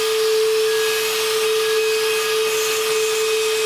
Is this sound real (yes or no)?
yes